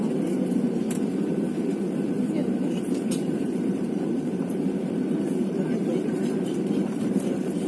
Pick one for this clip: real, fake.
fake